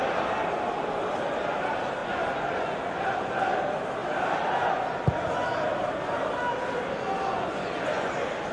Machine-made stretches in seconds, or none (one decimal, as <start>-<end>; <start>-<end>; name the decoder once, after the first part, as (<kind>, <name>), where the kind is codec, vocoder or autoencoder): 2.0-3.3 (vocoder, Vocos); 7.3-8.1